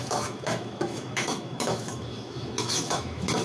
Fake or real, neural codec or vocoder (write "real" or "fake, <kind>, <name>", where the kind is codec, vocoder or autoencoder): fake, autoencoder, DAC-VAE